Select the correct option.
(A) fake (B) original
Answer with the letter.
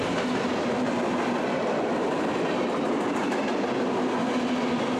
B